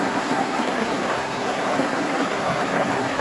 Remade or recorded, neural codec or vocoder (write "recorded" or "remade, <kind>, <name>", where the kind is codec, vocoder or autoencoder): remade, codec, SNAC